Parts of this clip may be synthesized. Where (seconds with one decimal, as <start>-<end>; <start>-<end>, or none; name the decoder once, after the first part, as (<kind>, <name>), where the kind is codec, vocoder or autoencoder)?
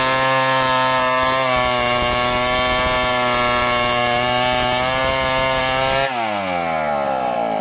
none